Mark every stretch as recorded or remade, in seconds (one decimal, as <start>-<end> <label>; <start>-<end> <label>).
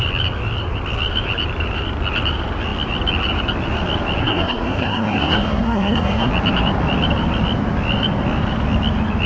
0.0-4.2 recorded; 4.2-6.3 remade; 6.3-9.3 recorded